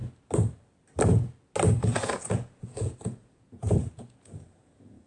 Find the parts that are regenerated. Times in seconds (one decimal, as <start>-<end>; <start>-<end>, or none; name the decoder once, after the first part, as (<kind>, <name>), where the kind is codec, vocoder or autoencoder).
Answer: 1.9-5.1 (vocoder, Vocos)